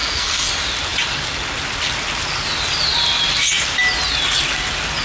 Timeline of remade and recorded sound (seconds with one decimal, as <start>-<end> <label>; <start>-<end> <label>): 0.0-0.5 remade; 0.5-5.0 recorded